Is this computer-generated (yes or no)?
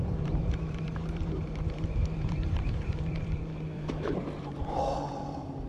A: yes